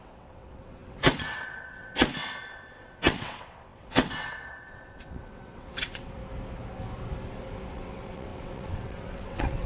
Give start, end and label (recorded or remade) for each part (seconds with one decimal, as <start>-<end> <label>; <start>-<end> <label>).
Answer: 0.0-6.2 remade; 6.2-7.7 recorded; 7.7-9.7 remade